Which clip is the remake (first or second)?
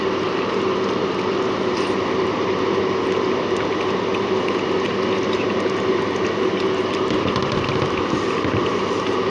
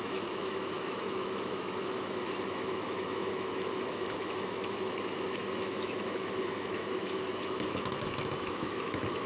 second